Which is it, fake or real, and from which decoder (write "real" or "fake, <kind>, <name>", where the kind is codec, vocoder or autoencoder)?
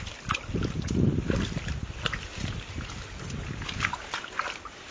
real